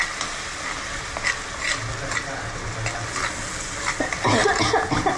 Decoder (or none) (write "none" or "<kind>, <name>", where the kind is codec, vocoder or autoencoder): none